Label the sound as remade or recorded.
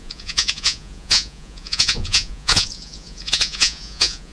remade